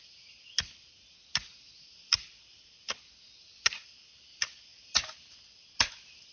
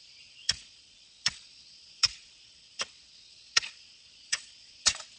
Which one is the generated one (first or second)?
second